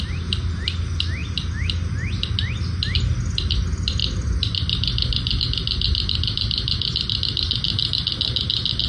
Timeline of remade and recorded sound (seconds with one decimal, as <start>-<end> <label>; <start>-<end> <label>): 0.0-1.2 recorded; 1.2-1.7 remade; 1.7-8.9 recorded